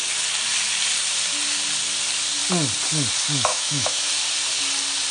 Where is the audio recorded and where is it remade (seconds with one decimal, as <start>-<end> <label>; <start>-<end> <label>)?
0.0-3.5 recorded; 3.5-4.1 remade; 4.1-5.1 recorded